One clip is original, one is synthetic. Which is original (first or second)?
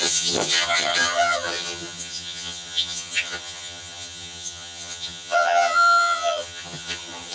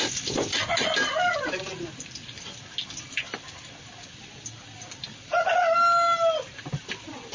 second